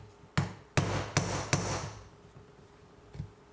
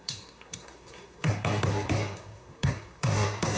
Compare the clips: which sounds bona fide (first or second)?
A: first